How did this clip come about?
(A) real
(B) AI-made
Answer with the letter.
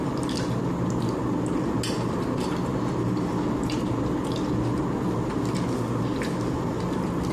A